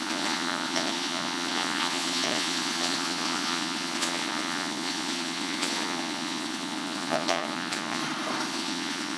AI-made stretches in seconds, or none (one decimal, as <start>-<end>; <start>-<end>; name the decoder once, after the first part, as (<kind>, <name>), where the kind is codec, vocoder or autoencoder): 0.0-8.0 (vocoder, Vocos); 8.5-9.2